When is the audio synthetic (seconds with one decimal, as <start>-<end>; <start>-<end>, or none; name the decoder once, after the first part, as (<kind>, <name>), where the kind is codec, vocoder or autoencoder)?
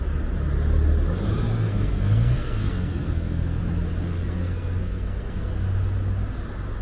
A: 1.5-3.6 (codec, SNAC); 4.0-5.5